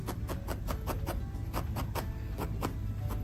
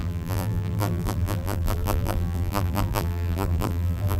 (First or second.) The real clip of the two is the first